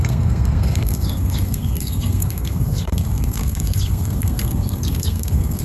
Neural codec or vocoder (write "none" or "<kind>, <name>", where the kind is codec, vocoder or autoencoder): codec, SNAC